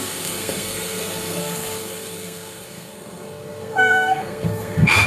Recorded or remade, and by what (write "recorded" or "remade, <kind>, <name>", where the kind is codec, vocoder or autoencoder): remade, codec, SNAC